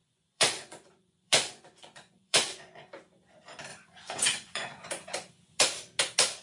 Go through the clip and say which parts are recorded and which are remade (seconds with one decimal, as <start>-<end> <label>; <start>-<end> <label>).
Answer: 0.0-2.9 remade; 2.9-3.7 recorded; 3.7-5.6 remade; 5.6-6.4 recorded